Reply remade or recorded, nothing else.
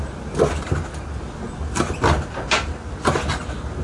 recorded